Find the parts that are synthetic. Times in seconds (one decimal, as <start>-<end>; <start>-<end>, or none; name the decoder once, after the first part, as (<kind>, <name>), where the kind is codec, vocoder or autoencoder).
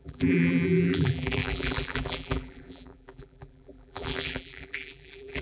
0.0-5.4 (vocoder, BigVGAN v2)